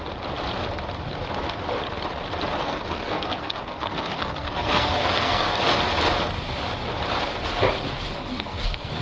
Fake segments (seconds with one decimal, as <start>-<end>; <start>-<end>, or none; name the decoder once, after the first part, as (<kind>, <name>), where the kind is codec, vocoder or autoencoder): 2.6-5.6 (codec, SNAC); 8.1-9.0